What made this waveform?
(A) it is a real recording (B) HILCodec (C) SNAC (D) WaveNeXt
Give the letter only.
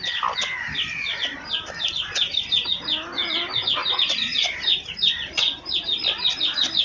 A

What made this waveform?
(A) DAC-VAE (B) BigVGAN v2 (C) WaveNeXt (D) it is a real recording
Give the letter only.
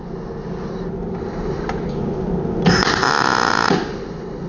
D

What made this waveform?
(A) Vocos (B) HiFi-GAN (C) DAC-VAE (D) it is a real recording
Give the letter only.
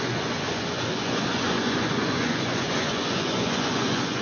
A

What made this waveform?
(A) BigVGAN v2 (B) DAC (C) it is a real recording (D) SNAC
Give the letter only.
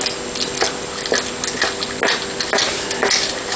C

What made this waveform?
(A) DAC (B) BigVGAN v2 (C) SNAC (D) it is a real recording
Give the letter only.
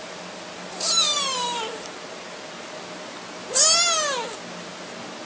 D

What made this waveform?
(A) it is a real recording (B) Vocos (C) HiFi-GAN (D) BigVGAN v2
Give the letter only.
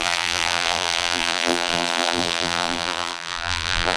D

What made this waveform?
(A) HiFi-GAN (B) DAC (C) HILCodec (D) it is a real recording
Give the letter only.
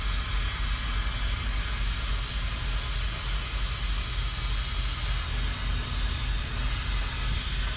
D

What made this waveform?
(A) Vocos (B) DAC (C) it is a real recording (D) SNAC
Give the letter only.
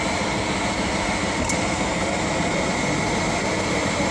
C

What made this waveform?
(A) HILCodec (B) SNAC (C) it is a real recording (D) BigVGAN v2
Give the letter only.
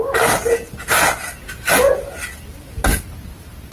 C